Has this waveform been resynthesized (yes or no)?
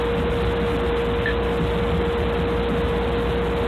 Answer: no